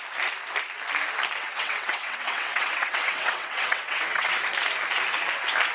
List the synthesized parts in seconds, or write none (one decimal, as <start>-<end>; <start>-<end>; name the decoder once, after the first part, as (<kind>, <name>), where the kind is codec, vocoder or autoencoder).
1.4-4.4 (vocoder, WaveNeXt)